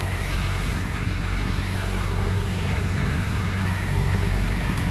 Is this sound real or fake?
fake